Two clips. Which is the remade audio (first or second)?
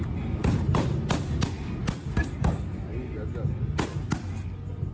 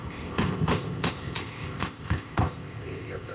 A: second